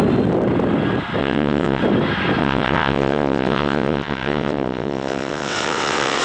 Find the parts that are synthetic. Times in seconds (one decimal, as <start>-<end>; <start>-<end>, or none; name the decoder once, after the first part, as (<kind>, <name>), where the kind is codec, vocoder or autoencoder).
1.2-1.8 (vocoder, WaveNeXt); 2.4-6.2